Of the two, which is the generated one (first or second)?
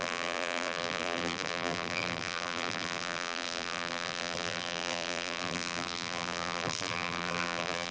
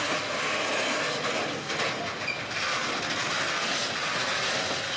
first